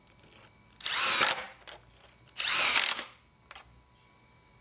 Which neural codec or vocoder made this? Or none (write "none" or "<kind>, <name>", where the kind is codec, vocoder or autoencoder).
none